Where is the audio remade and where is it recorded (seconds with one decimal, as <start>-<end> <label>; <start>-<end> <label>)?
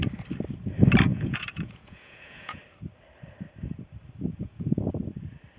0.0-1.1 recorded; 1.1-2.6 remade; 2.6-4.3 recorded; 4.3-4.8 remade; 4.8-5.6 recorded